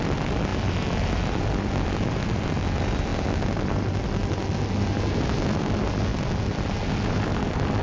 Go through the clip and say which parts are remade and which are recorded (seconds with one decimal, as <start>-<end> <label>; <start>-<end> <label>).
0.0-7.8 recorded